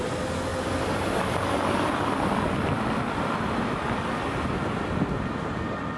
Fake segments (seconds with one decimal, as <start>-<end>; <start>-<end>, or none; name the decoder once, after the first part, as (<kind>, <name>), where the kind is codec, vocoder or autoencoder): 0.5-4.1 (vocoder, BigVGAN v2)